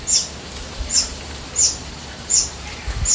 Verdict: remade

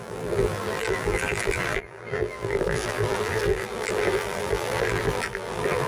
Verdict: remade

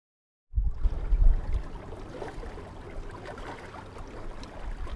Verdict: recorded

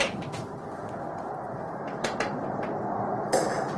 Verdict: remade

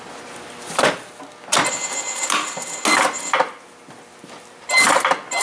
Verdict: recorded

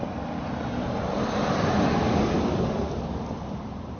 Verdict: remade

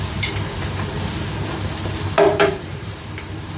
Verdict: remade